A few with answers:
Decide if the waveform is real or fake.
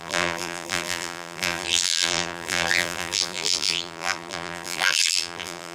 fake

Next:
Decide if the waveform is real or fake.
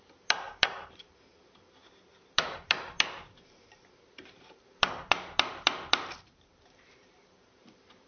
fake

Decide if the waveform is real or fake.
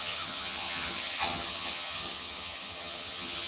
fake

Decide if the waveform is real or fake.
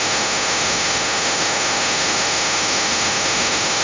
fake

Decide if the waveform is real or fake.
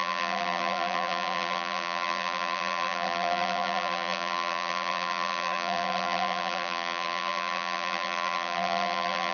fake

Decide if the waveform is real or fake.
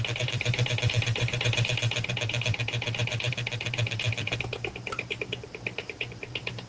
fake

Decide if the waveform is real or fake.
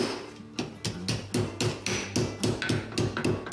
real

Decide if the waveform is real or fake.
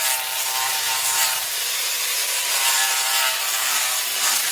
fake